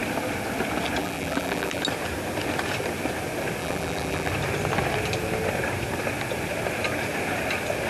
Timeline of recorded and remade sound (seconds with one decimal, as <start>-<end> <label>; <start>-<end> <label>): 0.0-1.0 recorded; 1.0-1.8 remade; 1.8-3.6 recorded; 3.6-4.3 remade; 4.3-7.9 recorded